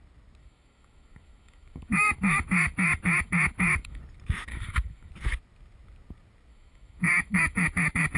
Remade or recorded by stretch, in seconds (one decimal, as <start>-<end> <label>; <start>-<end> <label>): 0.0-0.4 recorded; 0.4-4.0 remade; 4.0-4.5 recorded; 4.5-5.1 remade; 5.1-6.5 recorded; 6.5-8.2 remade